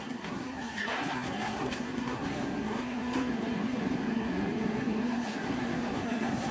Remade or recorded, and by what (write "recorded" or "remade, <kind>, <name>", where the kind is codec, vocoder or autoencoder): remade, codec, SNAC